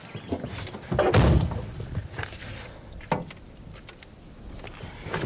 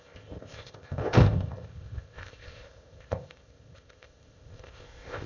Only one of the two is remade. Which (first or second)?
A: second